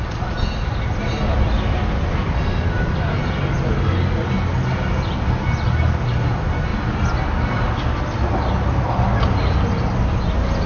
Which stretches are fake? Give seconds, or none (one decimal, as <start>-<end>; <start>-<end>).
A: none